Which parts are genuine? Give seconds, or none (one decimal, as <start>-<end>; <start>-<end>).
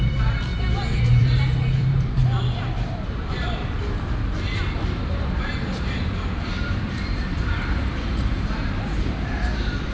0.5-1.1; 2.2-5.0